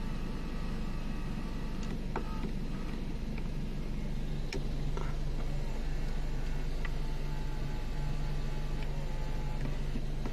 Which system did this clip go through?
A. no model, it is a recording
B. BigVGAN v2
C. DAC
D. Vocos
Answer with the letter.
A